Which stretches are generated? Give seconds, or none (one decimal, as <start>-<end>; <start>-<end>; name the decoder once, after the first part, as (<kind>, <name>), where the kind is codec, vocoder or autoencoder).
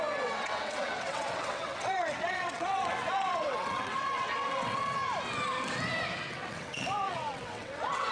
0.0-5.0 (vocoder, WaveNeXt); 6.3-8.1